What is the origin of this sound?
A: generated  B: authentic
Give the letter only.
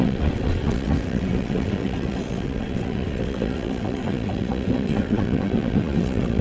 A